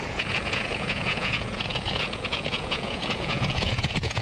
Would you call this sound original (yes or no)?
no